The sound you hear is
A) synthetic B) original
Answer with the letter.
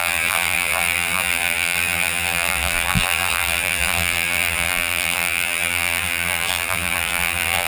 A